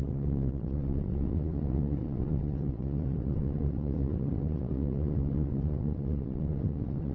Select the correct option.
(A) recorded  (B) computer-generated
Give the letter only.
B